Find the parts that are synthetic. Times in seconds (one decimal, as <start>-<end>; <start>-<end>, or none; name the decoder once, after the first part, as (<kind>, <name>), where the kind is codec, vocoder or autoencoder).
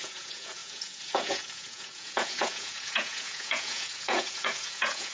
0.0-5.1 (vocoder, Vocos)